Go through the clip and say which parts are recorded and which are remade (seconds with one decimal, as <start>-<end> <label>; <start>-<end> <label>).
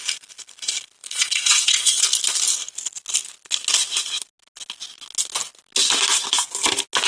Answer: 0.0-1.0 recorded; 1.0-2.0 remade; 2.0-7.1 recorded